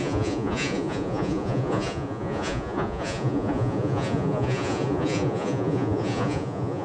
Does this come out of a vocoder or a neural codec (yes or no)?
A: yes